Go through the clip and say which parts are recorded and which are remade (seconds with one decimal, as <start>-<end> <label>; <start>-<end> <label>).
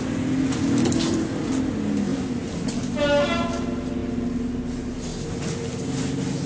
0.0-6.5 recorded